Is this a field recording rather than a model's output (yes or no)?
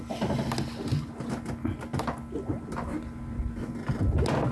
yes